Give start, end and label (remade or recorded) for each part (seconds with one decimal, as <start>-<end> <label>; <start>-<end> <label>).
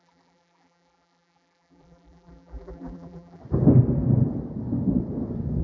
0.0-3.4 remade; 3.4-5.6 recorded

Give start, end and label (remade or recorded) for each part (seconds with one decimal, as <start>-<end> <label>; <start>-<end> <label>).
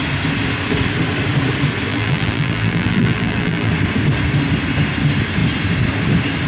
0.0-1.9 recorded; 1.9-3.7 remade; 3.7-6.5 recorded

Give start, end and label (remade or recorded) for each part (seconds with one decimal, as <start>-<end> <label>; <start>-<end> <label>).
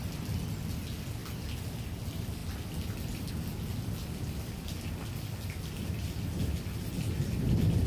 0.0-7.9 recorded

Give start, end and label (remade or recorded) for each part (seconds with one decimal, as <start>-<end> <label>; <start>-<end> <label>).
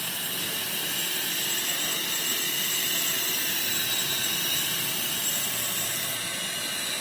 0.0-1.7 recorded; 1.7-5.9 remade; 5.9-7.0 recorded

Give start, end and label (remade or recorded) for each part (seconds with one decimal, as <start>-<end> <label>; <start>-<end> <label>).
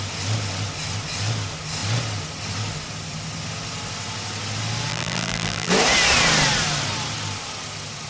0.0-4.9 recorded; 4.9-5.7 remade; 5.7-8.1 recorded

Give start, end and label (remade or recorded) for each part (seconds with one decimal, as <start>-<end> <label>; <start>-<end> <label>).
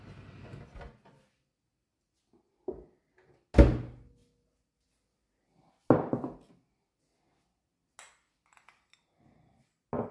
0.0-10.1 recorded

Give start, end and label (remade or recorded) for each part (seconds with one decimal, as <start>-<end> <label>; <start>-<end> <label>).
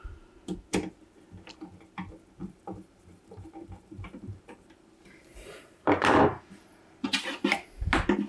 0.0-2.4 recorded; 2.4-7.2 remade; 7.2-8.3 recorded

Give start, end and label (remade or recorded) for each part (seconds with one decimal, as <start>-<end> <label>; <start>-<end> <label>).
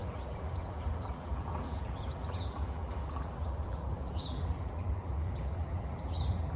0.0-6.6 remade